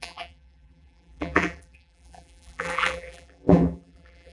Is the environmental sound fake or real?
fake